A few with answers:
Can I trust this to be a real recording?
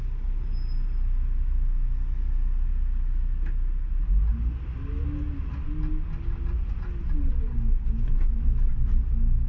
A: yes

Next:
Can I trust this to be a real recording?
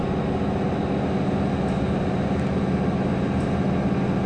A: yes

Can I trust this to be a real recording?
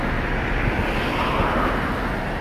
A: yes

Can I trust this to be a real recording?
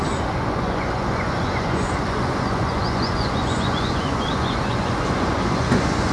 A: no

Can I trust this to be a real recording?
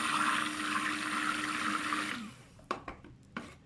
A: no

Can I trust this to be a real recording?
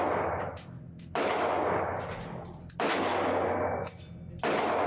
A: yes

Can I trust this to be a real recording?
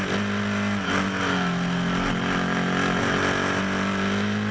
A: yes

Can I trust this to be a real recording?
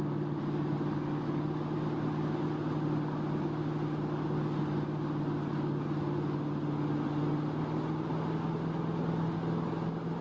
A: yes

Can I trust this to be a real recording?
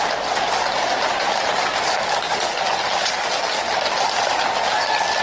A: yes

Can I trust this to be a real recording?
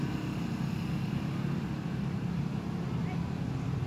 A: yes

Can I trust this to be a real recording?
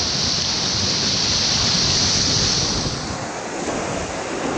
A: yes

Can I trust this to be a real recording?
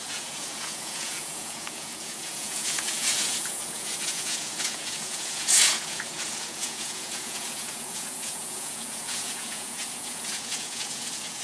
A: no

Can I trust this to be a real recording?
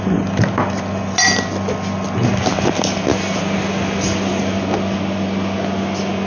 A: yes